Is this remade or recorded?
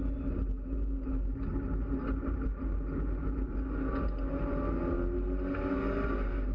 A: recorded